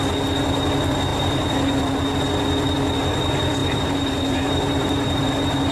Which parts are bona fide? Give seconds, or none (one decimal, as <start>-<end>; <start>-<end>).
0.0-1.1; 2.2-3.6; 5.3-5.7

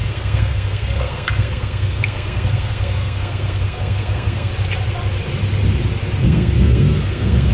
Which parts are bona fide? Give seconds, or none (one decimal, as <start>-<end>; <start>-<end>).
4.5-6.2